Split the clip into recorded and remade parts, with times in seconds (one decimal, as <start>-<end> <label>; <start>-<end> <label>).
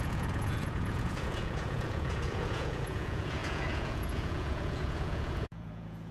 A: 0.0-6.1 remade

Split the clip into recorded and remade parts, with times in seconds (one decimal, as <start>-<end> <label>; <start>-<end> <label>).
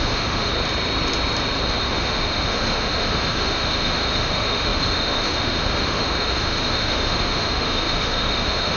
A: 0.0-0.5 remade; 0.5-1.8 recorded; 1.8-8.8 remade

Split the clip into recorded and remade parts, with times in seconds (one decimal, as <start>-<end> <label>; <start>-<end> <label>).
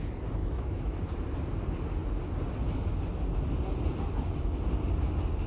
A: 0.0-0.4 recorded; 0.4-1.0 remade; 1.0-5.5 recorded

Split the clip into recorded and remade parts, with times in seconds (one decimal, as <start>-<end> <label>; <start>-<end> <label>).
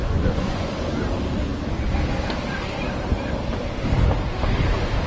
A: 0.0-0.9 remade; 0.9-5.1 recorded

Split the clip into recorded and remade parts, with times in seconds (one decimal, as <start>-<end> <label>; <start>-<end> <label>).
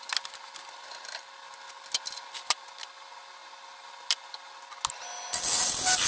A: 0.0-6.1 recorded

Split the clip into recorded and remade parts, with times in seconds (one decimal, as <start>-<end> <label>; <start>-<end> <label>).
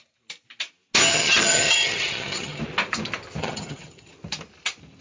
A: 0.0-1.1 recorded; 1.1-2.6 remade; 2.6-3.4 recorded; 3.4-4.1 remade; 4.1-5.0 recorded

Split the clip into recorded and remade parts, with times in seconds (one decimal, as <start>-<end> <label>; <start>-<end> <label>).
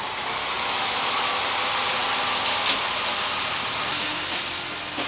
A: 0.0-0.4 recorded; 0.4-1.4 remade; 1.4-5.1 recorded